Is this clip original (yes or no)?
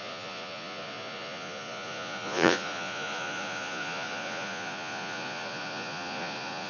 no